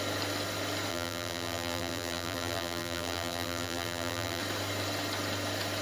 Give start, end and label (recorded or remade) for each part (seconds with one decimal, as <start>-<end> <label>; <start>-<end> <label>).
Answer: 0.0-0.9 recorded; 0.9-4.4 remade; 4.4-5.8 recorded

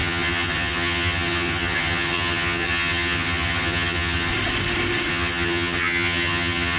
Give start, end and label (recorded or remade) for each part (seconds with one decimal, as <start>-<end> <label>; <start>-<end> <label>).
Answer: 0.0-4.3 remade; 4.3-5.1 recorded; 5.1-6.8 remade

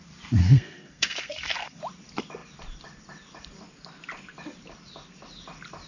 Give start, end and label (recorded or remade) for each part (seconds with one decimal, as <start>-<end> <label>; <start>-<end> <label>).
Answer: 0.0-0.4 recorded; 0.4-1.8 remade; 1.8-5.9 recorded